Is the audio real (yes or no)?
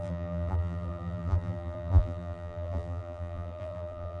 no